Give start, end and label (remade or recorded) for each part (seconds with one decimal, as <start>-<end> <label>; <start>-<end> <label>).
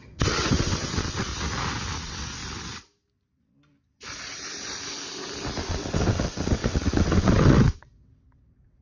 0.0-1.3 remade; 1.3-2.0 recorded; 2.0-2.4 remade; 2.4-5.7 recorded; 5.7-8.8 remade